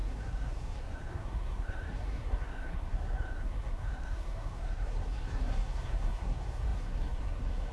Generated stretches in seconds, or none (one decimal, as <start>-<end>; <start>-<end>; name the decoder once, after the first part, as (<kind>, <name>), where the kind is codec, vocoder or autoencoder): 0.0-7.7 (codec, SNAC)